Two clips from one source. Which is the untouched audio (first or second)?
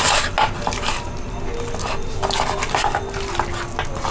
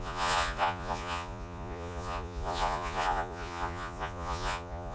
first